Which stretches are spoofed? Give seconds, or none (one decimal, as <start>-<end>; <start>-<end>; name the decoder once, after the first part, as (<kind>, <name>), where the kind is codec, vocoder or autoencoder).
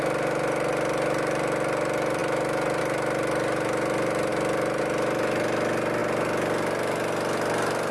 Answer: none